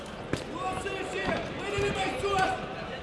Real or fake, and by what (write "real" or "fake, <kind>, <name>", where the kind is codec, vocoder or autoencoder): fake, vocoder, BigVGAN v2